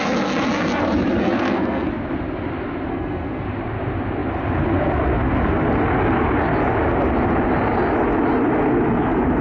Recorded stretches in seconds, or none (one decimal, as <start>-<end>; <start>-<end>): 0.0-1.2; 1.9-2.9; 3.4-9.4